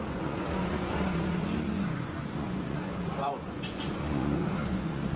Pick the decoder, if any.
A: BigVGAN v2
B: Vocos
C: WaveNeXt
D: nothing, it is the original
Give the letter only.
B